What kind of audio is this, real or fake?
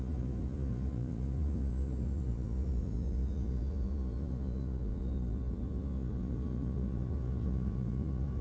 fake